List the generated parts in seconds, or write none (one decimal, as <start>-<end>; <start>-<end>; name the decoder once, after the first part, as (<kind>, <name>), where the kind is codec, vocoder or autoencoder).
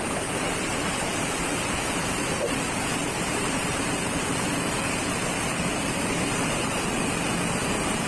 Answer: 0.0-8.1 (vocoder, BigVGAN v2)